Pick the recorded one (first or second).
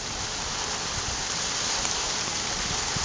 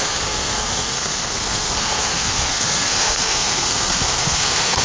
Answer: first